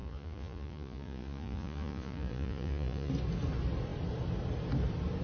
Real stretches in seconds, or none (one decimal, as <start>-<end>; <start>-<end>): 3.1-5.2